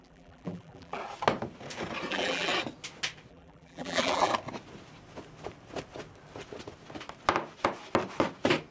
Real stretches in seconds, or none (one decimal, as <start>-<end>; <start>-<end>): 1.0-2.1; 2.5-3.3; 4.3-8.7